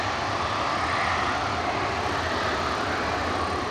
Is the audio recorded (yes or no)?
yes